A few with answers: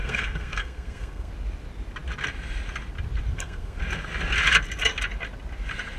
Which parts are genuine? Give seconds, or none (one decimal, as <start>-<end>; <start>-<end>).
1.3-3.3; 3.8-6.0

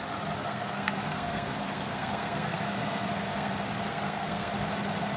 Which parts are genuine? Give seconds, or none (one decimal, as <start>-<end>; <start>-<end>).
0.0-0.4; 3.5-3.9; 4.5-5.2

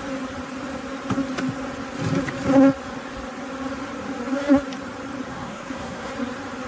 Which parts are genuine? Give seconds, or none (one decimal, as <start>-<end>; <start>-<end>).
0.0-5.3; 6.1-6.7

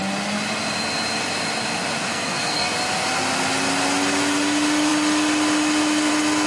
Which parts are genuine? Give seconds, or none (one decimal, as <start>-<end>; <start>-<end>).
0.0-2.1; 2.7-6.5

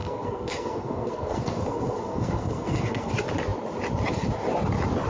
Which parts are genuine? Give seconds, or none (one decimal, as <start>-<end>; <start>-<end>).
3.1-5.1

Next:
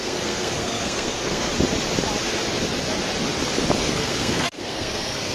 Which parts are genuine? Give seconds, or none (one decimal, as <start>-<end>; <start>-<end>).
1.5-3.8

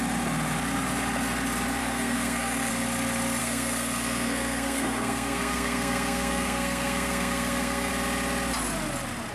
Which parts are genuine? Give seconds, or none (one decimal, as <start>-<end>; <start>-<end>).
0.0-1.8; 2.7-3.4; 7.9-9.3